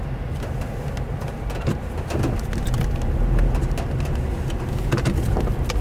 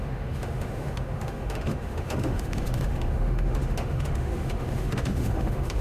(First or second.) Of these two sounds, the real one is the first